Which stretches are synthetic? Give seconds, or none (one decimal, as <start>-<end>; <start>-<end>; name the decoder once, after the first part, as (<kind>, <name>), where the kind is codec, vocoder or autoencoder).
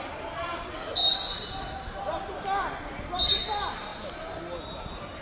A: 0.5-3.4 (vocoder, BigVGAN v2); 3.9-4.6